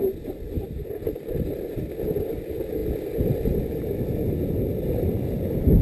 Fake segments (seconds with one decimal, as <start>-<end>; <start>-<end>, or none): none